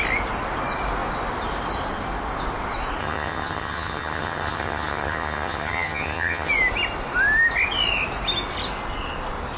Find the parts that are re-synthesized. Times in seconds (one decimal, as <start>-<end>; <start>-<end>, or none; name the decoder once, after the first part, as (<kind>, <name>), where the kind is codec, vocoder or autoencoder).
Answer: 3.0-6.5 (vocoder, HiFi-GAN)